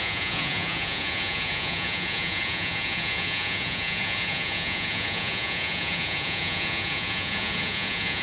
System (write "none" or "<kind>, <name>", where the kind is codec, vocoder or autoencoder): vocoder, Vocos